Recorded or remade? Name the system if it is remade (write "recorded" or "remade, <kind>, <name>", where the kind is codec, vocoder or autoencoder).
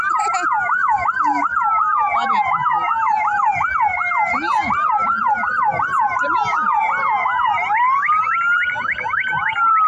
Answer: recorded